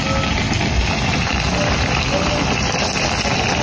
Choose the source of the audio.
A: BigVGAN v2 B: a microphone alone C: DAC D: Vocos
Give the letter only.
B